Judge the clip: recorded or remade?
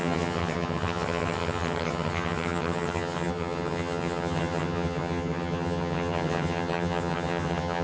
remade